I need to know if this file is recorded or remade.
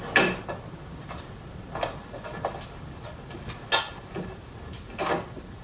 recorded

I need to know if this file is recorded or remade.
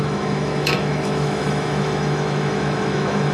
remade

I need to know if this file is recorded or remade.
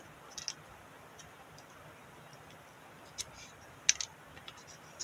recorded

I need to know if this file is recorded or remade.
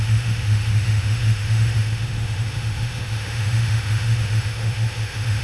remade